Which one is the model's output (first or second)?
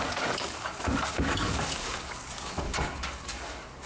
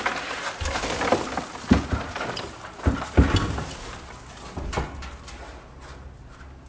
first